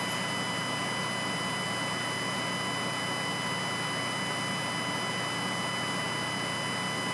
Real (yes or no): yes